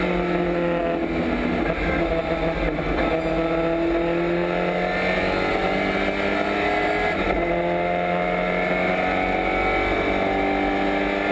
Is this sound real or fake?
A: real